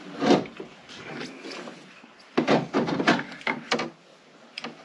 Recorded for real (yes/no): yes